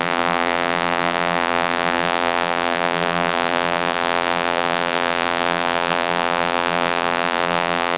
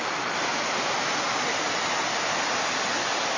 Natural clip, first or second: second